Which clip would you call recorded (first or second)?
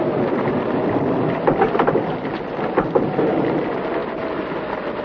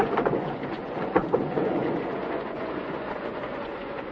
first